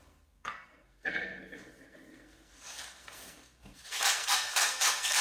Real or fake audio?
fake